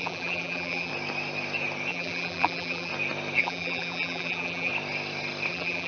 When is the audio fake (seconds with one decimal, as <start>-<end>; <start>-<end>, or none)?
0.0-0.9; 1.9-2.9; 3.4-4.7; 5.5-5.9